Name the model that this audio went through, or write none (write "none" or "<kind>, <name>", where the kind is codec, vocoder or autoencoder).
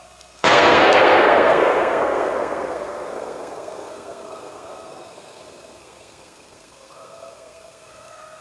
codec, SNAC